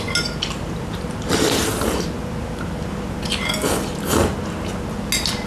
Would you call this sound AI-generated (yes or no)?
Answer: no